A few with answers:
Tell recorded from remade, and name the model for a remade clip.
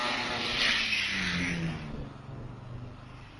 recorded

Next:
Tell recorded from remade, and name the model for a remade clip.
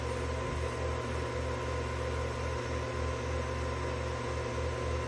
recorded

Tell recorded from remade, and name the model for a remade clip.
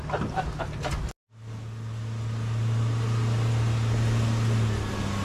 recorded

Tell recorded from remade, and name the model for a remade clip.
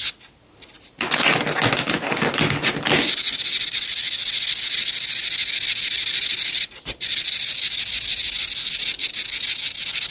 recorded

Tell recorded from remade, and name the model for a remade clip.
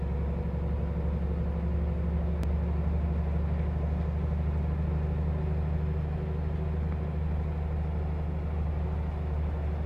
recorded